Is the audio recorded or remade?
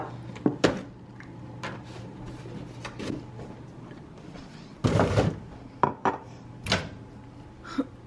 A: recorded